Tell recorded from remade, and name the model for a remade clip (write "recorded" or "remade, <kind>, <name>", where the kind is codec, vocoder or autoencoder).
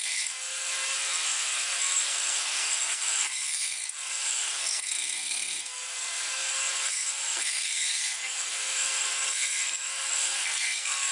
remade, codec, SNAC